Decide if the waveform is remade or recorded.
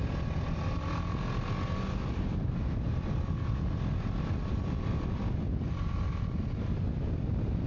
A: recorded